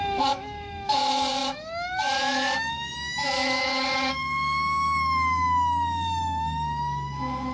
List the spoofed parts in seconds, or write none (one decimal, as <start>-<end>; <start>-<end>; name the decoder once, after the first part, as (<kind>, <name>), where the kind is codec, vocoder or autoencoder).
0.0-7.5 (autoencoder, DAC-VAE)